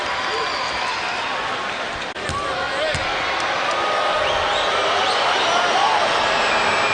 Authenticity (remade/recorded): recorded